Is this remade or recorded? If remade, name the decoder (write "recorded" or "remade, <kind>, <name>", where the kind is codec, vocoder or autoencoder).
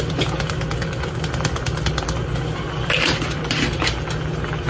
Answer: recorded